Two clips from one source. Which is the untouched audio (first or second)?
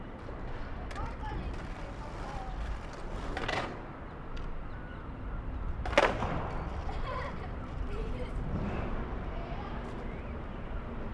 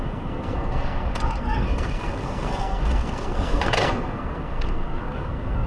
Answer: first